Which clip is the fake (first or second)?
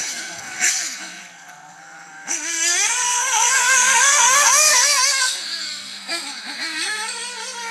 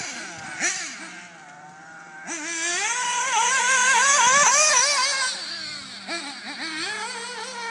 first